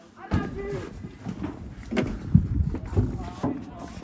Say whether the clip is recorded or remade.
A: recorded